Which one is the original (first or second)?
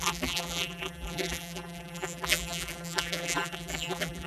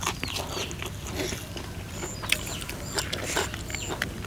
second